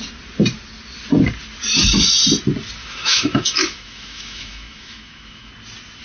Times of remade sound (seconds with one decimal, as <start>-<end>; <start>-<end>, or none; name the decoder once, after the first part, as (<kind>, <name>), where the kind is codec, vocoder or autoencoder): 2.8-5.5 (autoencoder, DAC-VAE)